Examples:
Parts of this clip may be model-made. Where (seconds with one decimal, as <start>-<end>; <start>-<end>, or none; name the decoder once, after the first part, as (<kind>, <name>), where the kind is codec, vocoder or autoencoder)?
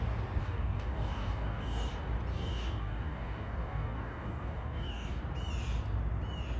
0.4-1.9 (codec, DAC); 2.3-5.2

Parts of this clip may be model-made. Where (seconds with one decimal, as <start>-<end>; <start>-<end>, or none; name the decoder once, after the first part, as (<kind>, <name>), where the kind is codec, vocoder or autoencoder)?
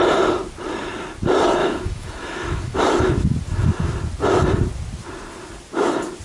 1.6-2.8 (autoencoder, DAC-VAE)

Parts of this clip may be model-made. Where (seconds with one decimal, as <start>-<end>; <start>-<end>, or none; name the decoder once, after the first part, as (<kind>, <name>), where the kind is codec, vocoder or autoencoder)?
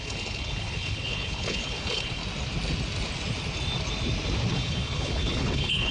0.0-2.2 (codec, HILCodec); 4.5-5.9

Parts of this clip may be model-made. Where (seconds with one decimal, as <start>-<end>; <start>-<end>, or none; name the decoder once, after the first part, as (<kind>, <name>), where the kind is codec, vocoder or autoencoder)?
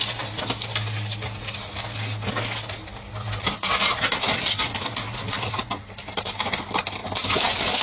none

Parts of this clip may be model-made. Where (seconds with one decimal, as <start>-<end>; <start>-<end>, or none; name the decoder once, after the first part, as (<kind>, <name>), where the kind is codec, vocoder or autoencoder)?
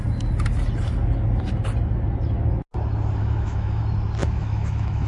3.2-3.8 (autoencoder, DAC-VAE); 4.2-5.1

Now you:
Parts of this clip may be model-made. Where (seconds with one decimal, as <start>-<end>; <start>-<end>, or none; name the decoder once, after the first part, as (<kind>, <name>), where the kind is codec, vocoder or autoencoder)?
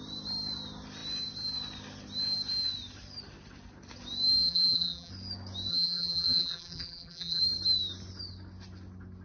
4.4-5.1 (vocoder, BigVGAN v2); 5.7-7.4